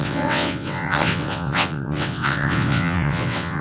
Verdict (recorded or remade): remade